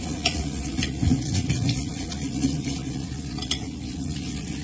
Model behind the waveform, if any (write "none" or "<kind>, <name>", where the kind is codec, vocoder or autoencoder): vocoder, Vocos